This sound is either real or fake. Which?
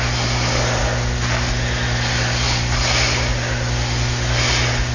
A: real